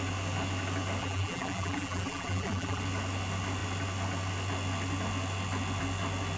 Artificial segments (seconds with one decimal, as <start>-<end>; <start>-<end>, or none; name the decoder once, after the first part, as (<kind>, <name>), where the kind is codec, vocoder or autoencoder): 1.0-2.8 (vocoder, BigVGAN v2)